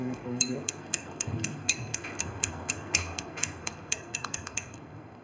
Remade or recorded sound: remade